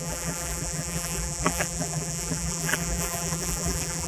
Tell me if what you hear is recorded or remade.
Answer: remade